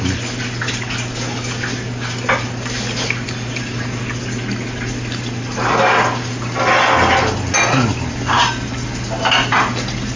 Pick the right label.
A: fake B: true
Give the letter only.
B